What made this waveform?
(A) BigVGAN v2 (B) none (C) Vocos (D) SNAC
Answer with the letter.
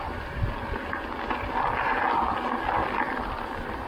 B